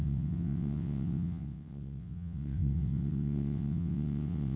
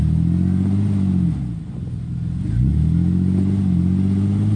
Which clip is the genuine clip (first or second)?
second